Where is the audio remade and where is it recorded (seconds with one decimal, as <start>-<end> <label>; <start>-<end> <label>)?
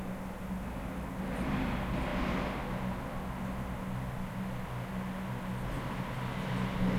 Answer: 0.0-7.0 recorded